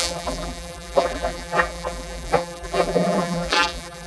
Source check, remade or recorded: remade